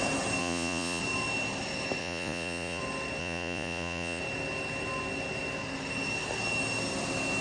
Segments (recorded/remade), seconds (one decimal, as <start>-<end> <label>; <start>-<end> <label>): 0.0-0.4 recorded; 0.4-1.0 remade; 1.0-2.0 recorded; 2.0-2.8 remade; 2.8-3.2 recorded; 3.2-4.2 remade; 4.2-7.4 recorded